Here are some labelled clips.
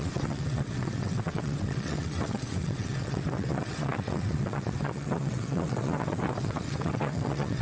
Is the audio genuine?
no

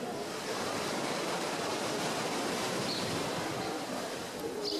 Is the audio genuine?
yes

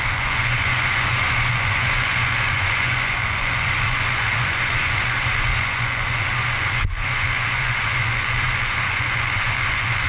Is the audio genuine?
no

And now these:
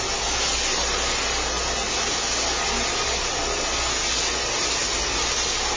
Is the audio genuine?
yes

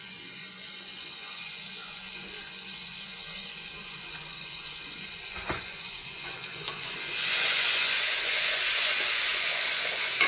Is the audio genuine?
no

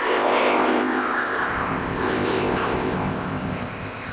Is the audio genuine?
no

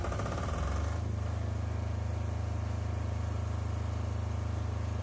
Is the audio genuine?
yes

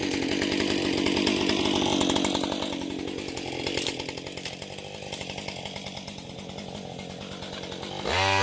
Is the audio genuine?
yes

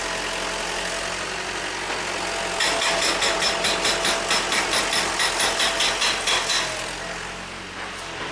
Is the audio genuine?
yes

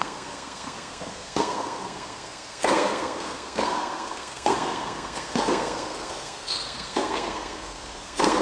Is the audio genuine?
no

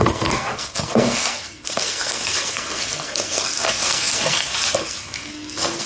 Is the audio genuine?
no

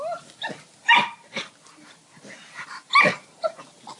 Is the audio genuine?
yes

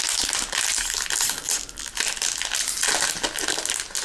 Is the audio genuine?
yes